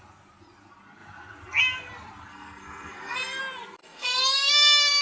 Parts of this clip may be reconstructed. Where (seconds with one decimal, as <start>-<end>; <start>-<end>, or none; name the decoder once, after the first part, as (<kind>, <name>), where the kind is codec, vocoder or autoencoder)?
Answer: 2.3-3.4 (codec, SNAC); 3.8-4.5